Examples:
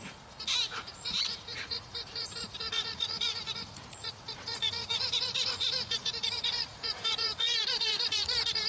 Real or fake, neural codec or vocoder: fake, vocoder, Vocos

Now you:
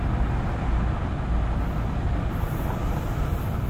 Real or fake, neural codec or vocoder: real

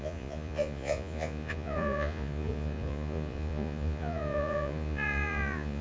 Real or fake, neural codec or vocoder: fake, vocoder, Vocos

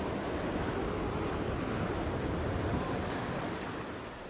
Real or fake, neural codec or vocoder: real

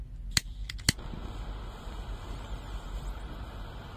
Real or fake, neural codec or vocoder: real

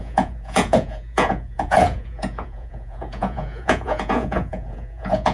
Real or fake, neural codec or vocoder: fake, vocoder, Vocos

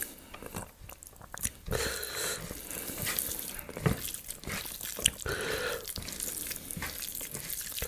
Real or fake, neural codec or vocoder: real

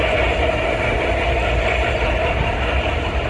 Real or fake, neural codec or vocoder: real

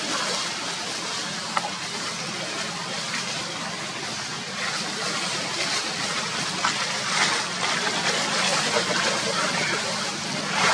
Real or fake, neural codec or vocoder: real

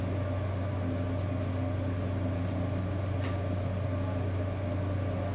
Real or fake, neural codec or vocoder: real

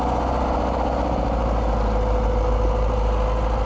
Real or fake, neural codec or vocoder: real